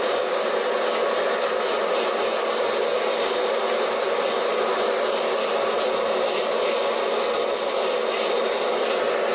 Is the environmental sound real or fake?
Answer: real